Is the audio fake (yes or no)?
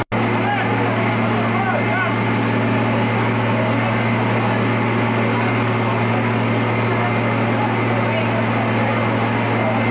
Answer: no